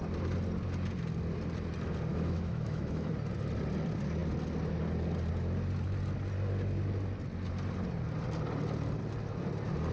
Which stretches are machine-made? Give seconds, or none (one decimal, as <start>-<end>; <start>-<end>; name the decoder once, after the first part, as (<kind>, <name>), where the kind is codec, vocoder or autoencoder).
2.1-3.1 (autoencoder, DAC-VAE)